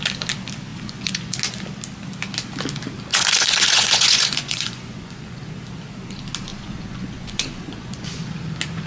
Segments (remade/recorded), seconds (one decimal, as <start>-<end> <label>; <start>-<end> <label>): 0.0-0.7 recorded; 0.7-1.4 remade; 1.4-3.1 recorded; 3.1-5.4 remade; 5.4-6.5 recorded; 6.5-8.2 remade; 8.2-8.9 recorded

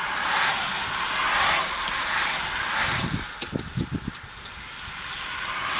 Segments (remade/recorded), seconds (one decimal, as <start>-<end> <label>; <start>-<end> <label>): 0.0-5.8 recorded